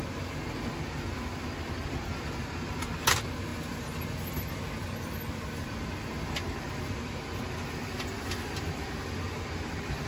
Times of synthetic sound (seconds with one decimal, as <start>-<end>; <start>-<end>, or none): none